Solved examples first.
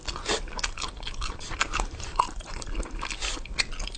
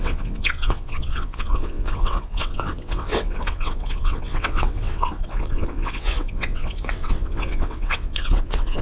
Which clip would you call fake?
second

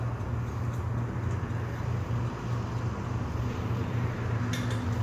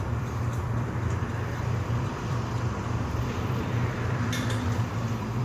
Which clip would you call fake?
second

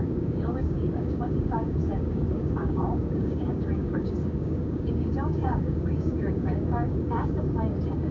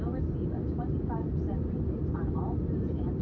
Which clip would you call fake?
first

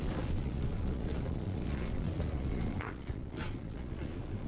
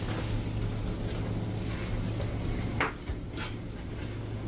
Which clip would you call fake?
first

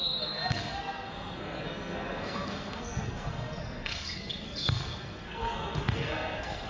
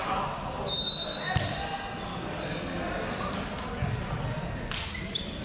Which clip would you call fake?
first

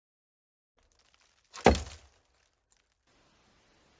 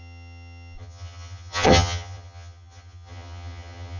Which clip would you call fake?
second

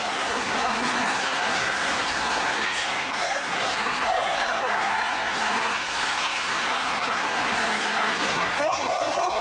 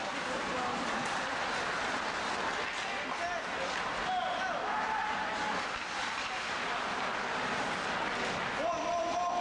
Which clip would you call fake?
first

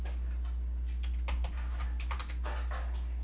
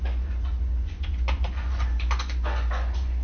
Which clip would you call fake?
second